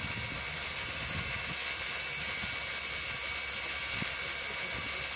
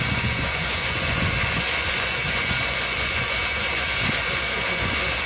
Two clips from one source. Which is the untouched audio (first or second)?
first